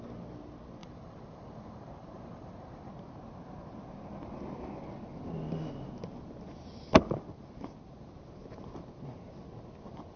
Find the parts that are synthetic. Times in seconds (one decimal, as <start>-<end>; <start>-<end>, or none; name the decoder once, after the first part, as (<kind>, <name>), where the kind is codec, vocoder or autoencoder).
0.8-2.9 (vocoder, BigVGAN v2)

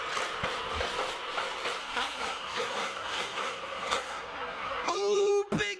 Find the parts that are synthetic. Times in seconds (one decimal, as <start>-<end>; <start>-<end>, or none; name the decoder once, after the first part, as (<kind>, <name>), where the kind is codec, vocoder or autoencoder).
1.8-5.3 (codec, SNAC)

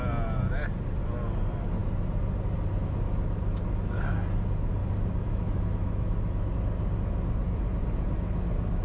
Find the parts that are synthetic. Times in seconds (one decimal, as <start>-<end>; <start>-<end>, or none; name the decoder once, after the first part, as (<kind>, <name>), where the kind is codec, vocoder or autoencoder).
4.8-6.5 (autoencoder, DAC-VAE)

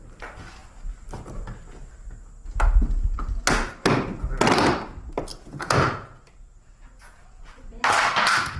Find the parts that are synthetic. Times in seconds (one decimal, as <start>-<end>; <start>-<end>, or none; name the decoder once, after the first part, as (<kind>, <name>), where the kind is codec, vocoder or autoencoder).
5.3-7.4 (vocoder, Vocos)

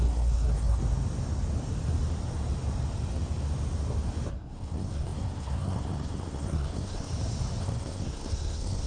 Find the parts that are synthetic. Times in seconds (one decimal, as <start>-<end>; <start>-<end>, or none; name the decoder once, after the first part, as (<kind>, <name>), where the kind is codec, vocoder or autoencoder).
0.0-0.8 (codec, SNAC); 4.3-7.1; 7.6-8.9